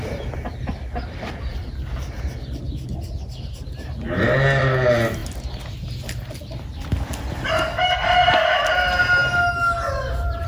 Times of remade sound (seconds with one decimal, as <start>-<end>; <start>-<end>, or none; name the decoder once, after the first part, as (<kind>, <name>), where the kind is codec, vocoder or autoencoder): none